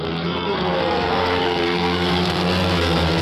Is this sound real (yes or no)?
no